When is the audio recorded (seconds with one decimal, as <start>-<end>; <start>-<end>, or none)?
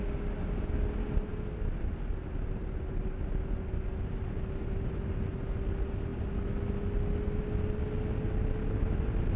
0.0-9.4